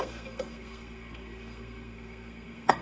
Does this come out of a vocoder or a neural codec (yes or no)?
yes